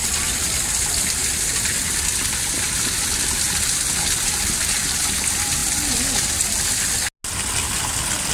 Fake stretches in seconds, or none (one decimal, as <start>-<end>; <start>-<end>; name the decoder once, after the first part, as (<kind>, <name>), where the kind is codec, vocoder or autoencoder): none